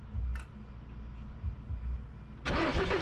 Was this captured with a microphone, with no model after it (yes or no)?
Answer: yes